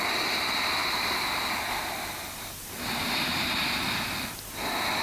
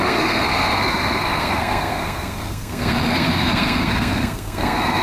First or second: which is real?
first